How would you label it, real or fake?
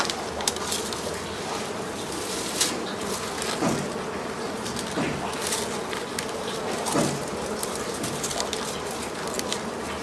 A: real